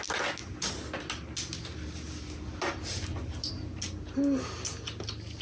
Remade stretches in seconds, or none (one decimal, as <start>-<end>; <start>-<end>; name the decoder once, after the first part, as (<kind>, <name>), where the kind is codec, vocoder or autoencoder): none